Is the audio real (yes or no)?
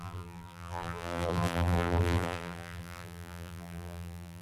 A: no